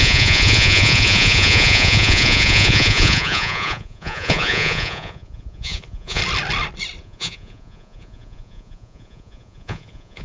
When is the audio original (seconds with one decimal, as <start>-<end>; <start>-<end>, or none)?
6.2-7.0